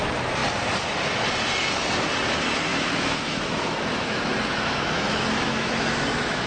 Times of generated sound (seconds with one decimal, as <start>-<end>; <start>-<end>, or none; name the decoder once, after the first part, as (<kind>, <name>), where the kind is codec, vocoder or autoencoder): 2.7-6.5 (autoencoder, DAC-VAE)